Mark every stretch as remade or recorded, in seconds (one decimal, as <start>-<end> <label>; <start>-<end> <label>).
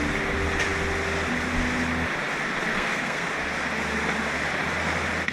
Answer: 0.0-2.7 recorded; 2.7-3.3 remade; 3.3-5.3 recorded